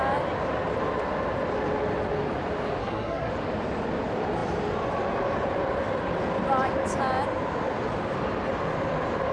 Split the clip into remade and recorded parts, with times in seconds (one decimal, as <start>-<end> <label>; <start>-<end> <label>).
0.0-2.8 recorded; 2.8-3.3 remade; 3.3-9.3 recorded